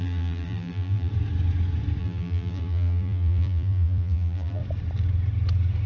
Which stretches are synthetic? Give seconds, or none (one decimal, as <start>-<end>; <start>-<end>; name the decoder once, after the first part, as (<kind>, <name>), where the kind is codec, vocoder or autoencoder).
0.0-1.1 (vocoder, BigVGAN v2); 2.0-4.6